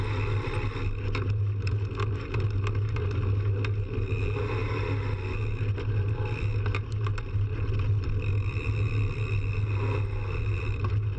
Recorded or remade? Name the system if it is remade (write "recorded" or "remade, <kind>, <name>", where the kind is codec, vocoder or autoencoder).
recorded